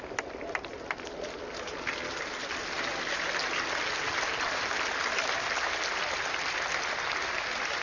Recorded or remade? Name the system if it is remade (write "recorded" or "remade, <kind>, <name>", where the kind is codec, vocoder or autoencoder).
recorded